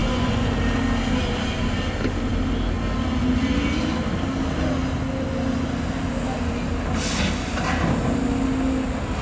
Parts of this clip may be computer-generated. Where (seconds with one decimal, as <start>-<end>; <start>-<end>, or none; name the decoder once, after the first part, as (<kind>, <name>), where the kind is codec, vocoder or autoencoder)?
0.0-0.5 (vocoder, Vocos)